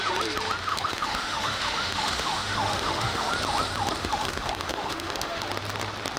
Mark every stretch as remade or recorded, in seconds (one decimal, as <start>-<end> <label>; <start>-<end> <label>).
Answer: 0.0-0.7 recorded; 0.7-3.3 remade; 3.3-4.0 recorded; 4.0-5.4 remade; 5.4-6.2 recorded